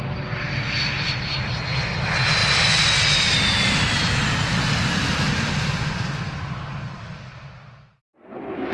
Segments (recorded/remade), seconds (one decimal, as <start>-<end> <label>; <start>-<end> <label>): 0.0-8.7 recorded